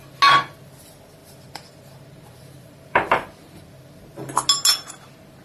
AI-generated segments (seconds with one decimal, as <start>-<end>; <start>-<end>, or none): 1.2-4.0